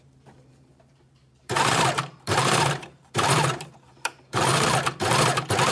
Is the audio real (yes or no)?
no